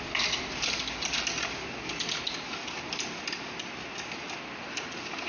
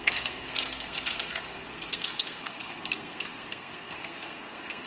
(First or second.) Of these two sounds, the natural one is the first